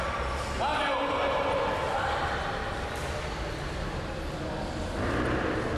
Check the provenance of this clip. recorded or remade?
recorded